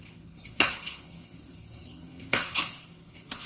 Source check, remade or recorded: remade